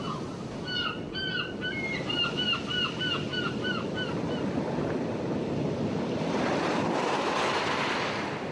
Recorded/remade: recorded